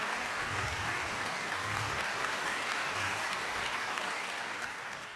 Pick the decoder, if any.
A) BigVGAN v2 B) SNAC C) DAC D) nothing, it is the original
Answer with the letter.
C